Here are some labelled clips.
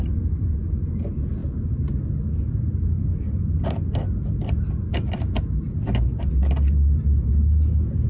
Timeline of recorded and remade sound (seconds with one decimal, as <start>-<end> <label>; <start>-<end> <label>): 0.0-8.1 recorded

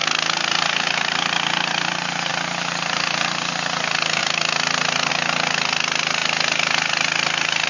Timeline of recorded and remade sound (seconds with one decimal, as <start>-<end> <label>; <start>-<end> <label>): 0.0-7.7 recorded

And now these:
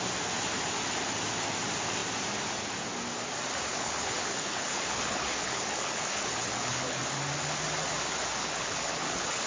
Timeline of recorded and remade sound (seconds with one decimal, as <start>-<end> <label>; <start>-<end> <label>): 0.0-3.7 recorded; 3.7-7.0 remade; 7.0-8.4 recorded; 8.4-9.5 remade

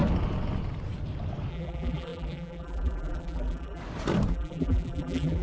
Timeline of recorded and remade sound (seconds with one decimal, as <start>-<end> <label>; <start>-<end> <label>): 0.0-1.5 recorded; 1.5-3.8 remade; 3.8-4.3 recorded; 4.3-5.4 remade